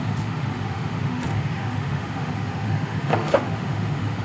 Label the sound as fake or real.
fake